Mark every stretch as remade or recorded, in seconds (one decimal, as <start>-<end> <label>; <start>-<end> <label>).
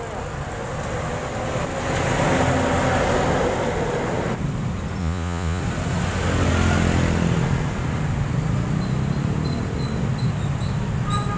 0.0-5.0 recorded; 5.0-5.6 remade; 5.6-11.4 recorded